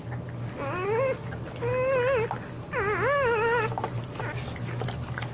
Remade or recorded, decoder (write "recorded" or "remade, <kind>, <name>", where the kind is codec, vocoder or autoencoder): recorded